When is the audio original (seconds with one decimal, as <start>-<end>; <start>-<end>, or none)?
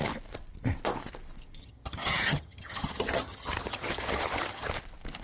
0.0-1.6; 4.7-5.2